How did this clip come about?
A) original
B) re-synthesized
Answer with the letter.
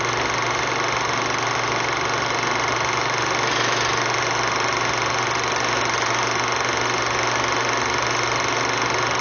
A